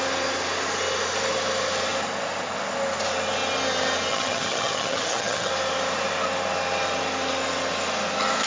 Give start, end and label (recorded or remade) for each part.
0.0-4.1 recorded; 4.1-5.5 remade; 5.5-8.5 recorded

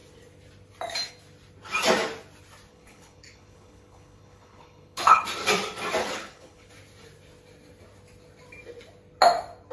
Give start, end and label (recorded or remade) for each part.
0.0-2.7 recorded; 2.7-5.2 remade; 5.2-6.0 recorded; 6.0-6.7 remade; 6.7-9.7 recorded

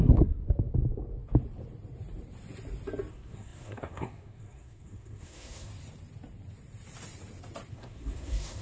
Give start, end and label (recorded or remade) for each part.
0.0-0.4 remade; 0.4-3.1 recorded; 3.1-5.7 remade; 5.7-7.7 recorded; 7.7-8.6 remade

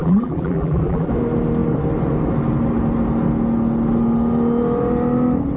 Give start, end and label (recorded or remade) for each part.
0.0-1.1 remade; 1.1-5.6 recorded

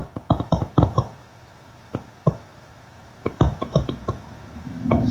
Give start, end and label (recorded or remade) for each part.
0.0-5.1 remade

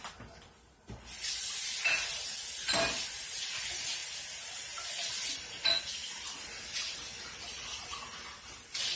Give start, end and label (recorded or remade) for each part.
0.0-9.0 recorded

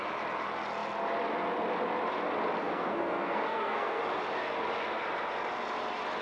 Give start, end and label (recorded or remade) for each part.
0.0-2.6 recorded; 2.6-4.0 remade; 4.0-6.2 recorded